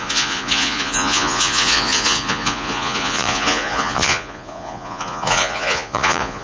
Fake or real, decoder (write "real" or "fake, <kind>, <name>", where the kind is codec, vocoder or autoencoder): fake, vocoder, Vocos